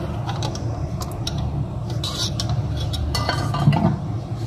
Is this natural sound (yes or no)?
yes